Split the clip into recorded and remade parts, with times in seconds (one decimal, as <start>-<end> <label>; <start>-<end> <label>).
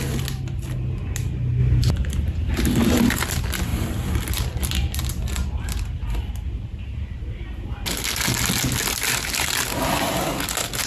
0.0-1.6 recorded; 1.6-3.0 remade; 3.0-3.7 recorded; 3.7-5.1 remade; 5.1-10.9 recorded